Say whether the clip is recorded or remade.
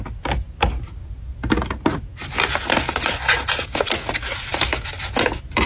recorded